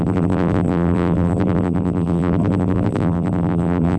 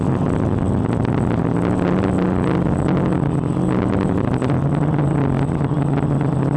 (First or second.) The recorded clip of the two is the second